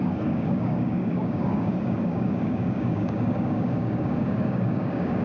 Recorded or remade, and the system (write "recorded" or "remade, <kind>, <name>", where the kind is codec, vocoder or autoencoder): remade, codec, DAC